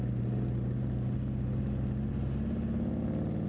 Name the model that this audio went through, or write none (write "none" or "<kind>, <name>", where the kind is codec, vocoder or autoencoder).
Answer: none